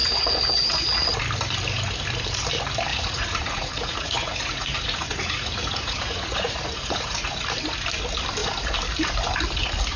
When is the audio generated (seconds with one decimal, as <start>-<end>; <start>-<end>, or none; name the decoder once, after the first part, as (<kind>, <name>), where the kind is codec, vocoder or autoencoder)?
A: 2.9-7.4 (vocoder, Vocos)